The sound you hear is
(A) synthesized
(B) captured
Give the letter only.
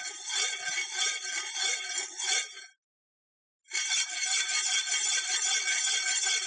B